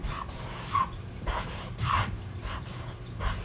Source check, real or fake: fake